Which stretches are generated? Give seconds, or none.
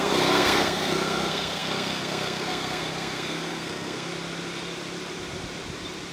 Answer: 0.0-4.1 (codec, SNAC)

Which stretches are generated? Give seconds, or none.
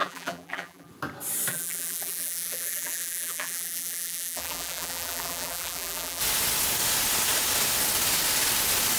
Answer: 0.0-0.9 (vocoder, BigVGAN v2); 1.5-6.2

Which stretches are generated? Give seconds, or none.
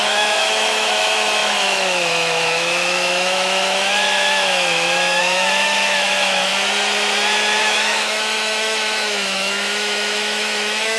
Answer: 0.0-6.5 (autoencoder, DAC-VAE); 7.6-11.0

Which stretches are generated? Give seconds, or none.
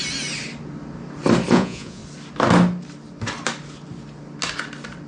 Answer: 1.5-2.0 (vocoder, Vocos)